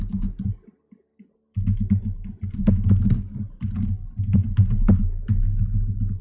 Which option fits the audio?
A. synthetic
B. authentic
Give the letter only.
B